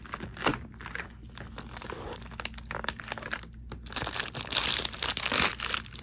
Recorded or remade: recorded